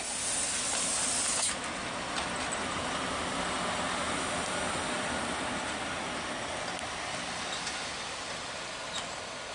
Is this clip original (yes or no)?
yes